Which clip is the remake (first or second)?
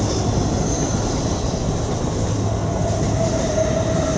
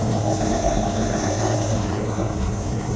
second